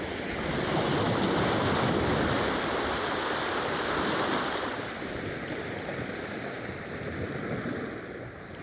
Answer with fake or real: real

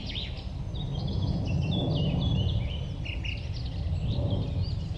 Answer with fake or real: real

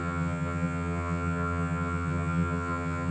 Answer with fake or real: fake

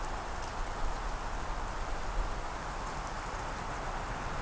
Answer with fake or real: real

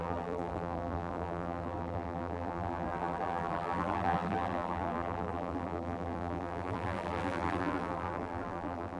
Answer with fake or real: fake